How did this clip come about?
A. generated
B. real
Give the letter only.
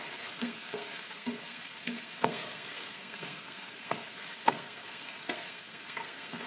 A